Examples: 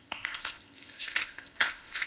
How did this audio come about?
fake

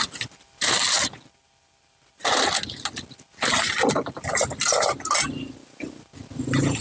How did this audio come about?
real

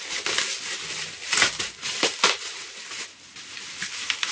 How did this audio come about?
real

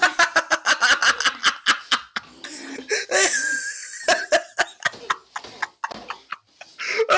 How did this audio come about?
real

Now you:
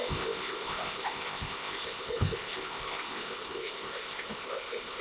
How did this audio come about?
fake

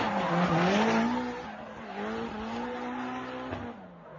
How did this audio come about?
real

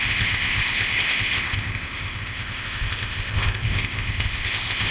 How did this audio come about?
fake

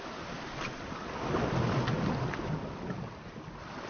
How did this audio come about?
real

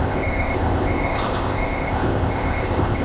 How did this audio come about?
fake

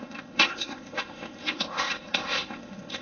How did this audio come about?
fake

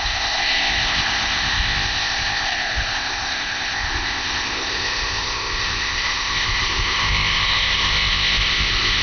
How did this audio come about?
fake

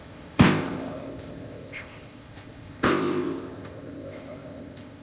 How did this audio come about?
fake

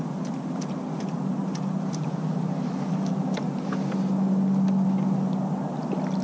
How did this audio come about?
real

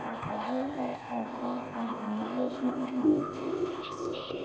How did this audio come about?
fake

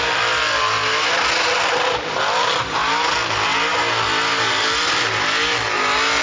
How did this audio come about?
real